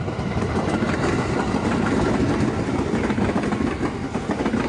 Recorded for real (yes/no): yes